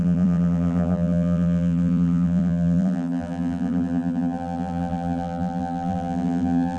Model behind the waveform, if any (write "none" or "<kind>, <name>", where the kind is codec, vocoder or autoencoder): vocoder, BigVGAN v2